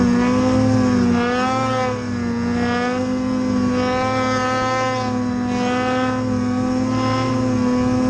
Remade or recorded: recorded